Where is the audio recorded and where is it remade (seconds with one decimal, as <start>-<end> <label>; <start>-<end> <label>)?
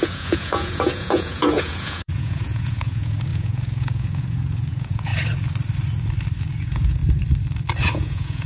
0.0-5.1 remade; 5.1-6.6 recorded; 6.6-7.0 remade; 7.0-7.8 recorded; 7.8-8.5 remade